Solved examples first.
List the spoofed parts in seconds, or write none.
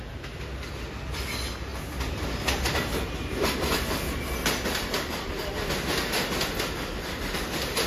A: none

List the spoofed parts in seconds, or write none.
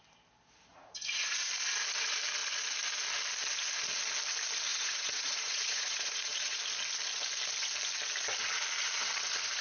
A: 0.7-1.5 (vocoder, Vocos); 4.7-6.6